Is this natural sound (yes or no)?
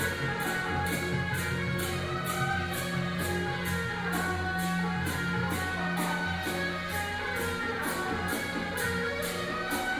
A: yes